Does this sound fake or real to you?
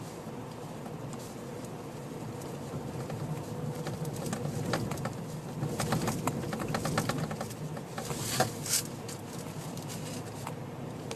real